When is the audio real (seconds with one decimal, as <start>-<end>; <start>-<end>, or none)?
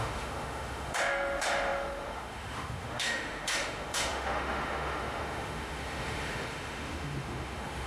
none